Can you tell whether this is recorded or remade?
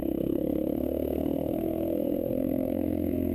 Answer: remade